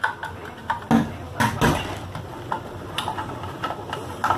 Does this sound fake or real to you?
real